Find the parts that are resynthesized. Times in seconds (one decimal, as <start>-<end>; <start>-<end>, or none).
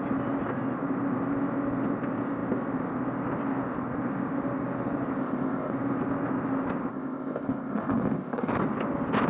5.2-5.7; 6.9-8.6